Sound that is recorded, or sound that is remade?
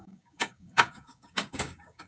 remade